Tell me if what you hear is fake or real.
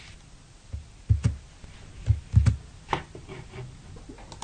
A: real